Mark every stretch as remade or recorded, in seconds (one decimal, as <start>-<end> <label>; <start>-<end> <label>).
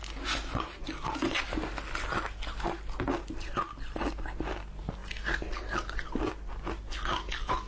0.0-7.7 recorded